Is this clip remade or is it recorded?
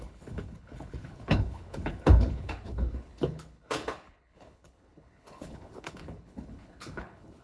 remade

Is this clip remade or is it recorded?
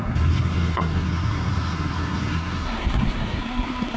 remade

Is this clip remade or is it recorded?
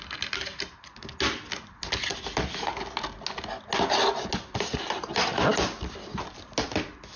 recorded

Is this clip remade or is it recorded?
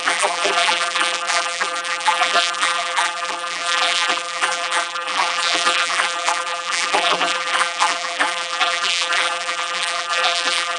remade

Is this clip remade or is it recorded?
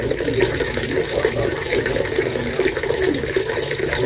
remade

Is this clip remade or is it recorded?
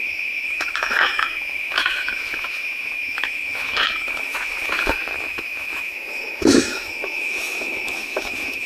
remade